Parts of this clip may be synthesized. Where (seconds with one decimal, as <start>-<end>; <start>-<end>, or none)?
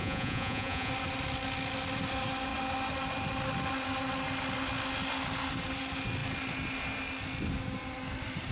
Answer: 0.0-0.9